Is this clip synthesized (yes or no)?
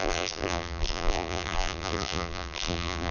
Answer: yes